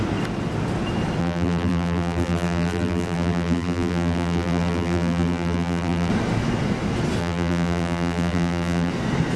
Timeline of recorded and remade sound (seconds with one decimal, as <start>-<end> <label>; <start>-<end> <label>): 0.0-1.2 recorded; 1.2-6.1 remade; 6.1-7.2 recorded; 7.2-8.9 remade; 8.9-9.4 recorded